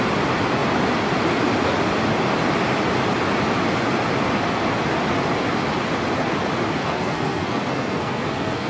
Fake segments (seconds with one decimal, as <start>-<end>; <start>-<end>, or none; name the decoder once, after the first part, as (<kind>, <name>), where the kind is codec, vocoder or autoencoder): 6.8-8.7 (codec, SNAC)